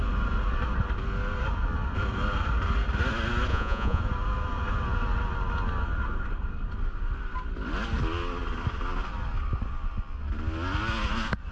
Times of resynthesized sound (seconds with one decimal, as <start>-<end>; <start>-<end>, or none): 3.5-4.0

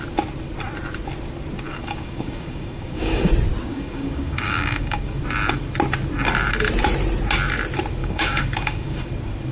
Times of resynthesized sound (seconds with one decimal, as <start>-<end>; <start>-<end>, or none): 1.7-3.3; 3.7-5.2; 8.0-9.1

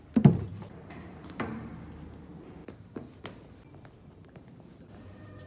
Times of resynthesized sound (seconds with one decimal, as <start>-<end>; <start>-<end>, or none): 0.5-1.7; 2.6-3.2; 4.2-5.5

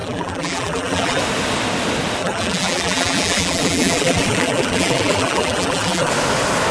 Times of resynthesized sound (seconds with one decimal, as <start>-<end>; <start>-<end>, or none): 0.0-1.2; 2.2-6.1

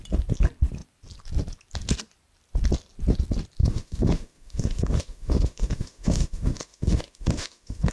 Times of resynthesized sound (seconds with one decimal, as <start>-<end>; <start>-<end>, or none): 3.6-7.9

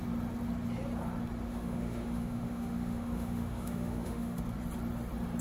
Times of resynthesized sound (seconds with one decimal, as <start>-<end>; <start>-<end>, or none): 1.5-4.4

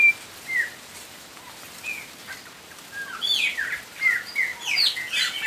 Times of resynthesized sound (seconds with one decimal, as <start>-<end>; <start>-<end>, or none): none

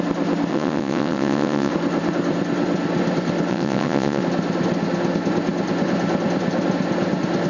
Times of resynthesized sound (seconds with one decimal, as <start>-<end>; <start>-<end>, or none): 0.5-1.7; 3.5-4.2